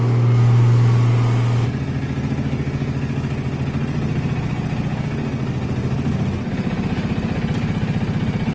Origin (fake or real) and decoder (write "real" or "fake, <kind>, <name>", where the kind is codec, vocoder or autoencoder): real